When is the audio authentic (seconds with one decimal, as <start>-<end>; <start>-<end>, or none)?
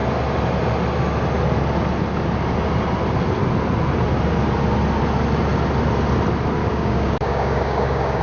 0.0-6.6